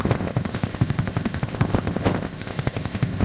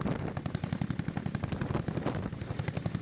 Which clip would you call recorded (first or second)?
second